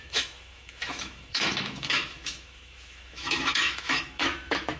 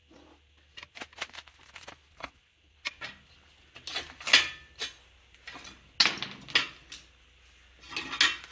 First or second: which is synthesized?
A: first